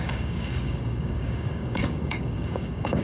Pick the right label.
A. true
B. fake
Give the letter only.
B